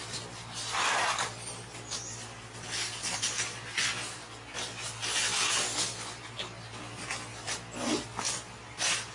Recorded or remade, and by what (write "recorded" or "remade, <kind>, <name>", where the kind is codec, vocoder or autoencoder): recorded